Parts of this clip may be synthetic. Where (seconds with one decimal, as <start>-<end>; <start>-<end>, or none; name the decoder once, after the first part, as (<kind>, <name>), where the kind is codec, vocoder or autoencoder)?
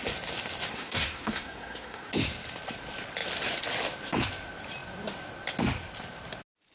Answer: 0.7-2.1 (codec, SNAC)